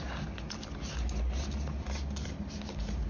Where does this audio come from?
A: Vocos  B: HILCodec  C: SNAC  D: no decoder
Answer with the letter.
D